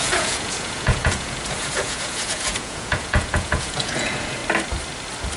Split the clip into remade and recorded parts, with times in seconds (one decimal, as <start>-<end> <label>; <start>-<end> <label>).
0.0-4.4 remade; 4.4-5.4 recorded

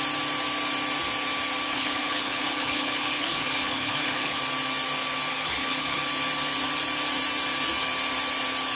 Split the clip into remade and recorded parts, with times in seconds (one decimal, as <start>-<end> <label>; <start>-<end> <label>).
0.0-1.7 recorded; 1.7-4.4 remade; 4.4-5.3 recorded; 5.3-6.0 remade; 6.0-8.8 recorded

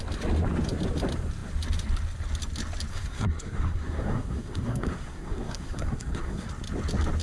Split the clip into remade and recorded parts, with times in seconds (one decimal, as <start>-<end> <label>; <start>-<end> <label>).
0.0-2.9 recorded; 2.9-6.5 remade; 6.5-7.2 recorded

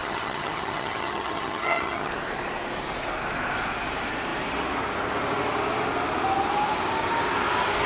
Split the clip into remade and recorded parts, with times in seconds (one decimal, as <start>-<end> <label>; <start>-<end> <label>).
0.0-2.1 remade; 2.1-7.9 recorded

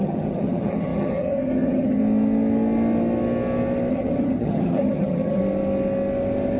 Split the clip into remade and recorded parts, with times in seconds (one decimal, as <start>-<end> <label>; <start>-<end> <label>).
0.0-2.0 remade; 2.0-3.9 recorded; 3.9-5.4 remade; 5.4-6.6 recorded

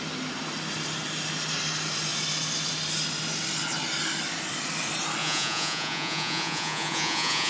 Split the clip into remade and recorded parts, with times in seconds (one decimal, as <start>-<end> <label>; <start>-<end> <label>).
0.0-5.2 recorded; 5.2-7.5 remade

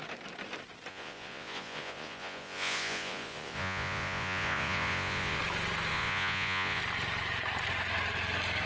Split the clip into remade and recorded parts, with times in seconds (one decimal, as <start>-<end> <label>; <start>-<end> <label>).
0.0-0.9 recorded; 0.9-5.4 remade; 5.4-5.9 recorded; 5.9-6.8 remade; 6.8-8.7 recorded